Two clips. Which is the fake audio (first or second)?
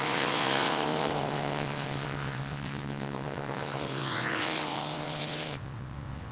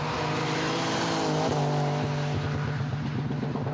first